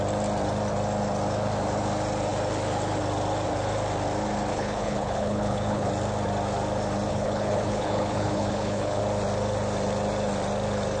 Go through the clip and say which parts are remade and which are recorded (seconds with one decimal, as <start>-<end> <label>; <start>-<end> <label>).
0.0-4.5 recorded; 4.5-5.9 remade; 5.9-7.1 recorded; 7.1-9.0 remade; 9.0-11.0 recorded

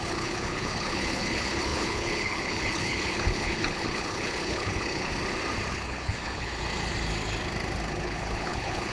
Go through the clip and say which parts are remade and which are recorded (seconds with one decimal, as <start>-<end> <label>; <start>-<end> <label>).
0.0-5.1 remade; 5.1-5.7 recorded; 5.7-6.6 remade; 6.6-7.9 recorded; 7.9-8.9 remade

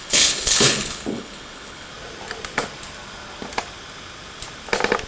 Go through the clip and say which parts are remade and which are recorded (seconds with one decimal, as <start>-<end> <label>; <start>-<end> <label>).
0.0-1.9 remade; 1.9-5.1 recorded

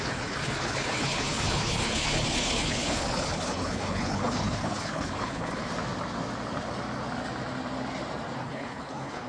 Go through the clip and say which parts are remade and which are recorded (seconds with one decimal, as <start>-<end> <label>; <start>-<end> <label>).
0.0-5.7 remade; 5.7-8.4 recorded; 8.4-9.3 remade

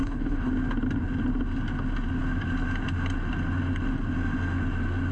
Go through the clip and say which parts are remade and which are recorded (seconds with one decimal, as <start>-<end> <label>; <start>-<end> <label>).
0.0-0.5 remade; 0.5-5.1 recorded